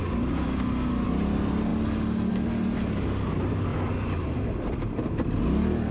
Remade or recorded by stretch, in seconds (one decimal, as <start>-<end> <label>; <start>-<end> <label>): 0.0-3.7 recorded; 3.7-5.4 remade; 5.4-5.9 recorded